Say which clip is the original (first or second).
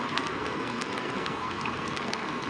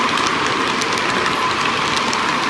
second